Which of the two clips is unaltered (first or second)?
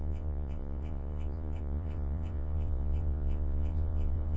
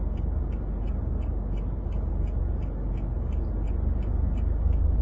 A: second